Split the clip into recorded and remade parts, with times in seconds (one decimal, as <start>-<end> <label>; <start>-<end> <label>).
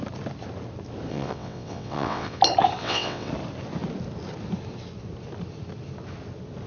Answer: 0.0-1.1 recorded; 1.1-2.4 remade; 2.4-2.8 recorded; 2.8-3.3 remade; 3.3-6.7 recorded